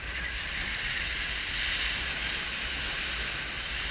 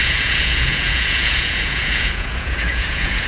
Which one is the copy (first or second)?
second